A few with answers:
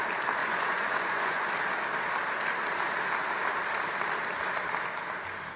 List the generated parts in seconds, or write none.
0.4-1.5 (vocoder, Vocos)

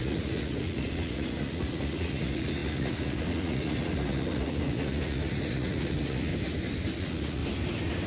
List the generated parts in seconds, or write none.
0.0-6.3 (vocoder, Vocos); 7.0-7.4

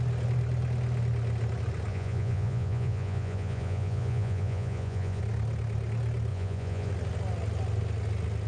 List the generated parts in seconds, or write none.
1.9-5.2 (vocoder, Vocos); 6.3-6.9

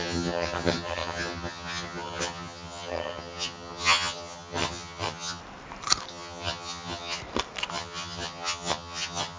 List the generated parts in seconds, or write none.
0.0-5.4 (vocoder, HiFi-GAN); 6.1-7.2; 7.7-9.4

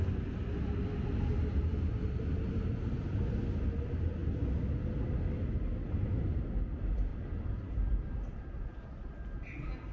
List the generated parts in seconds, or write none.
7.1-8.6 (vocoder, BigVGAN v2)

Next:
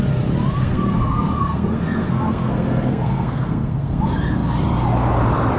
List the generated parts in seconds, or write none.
0.6-4.0 (codec, SNAC)

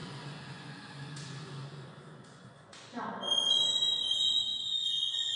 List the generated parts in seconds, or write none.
0.0-3.2 (vocoder, Vocos); 4.5-5.4